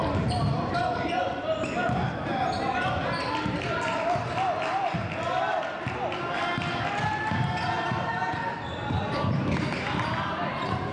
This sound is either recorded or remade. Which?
recorded